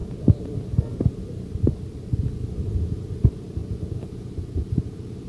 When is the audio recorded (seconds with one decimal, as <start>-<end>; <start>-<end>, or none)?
0.0-5.3